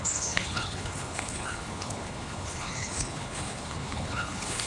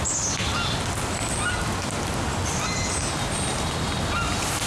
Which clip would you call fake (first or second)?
first